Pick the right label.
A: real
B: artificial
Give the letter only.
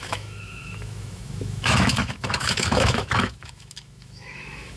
B